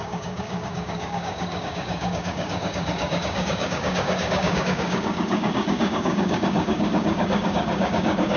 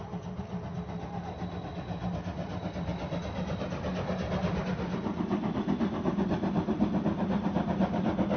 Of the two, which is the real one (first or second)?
second